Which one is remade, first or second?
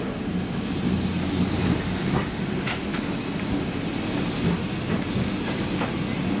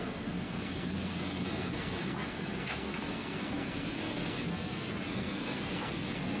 second